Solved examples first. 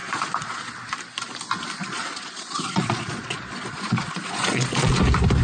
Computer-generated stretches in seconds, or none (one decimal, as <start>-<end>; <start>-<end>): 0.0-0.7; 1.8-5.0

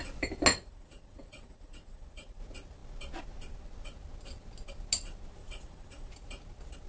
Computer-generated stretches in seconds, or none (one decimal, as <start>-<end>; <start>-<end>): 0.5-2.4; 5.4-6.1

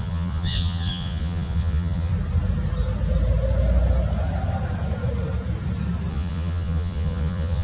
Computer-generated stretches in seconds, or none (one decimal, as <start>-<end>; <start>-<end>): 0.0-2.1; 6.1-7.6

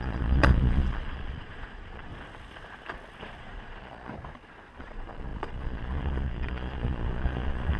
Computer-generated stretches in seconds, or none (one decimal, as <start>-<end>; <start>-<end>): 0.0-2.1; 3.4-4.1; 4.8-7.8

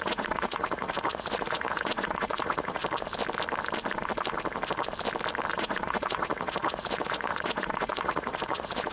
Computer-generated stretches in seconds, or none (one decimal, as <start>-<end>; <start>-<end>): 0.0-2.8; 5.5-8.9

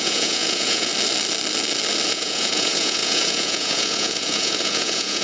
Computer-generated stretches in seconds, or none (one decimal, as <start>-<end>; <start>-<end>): 0.0-0.9; 2.1-5.2

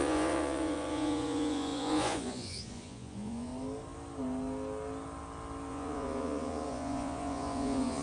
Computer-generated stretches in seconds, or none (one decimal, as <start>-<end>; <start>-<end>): 0.0-3.5; 5.7-8.0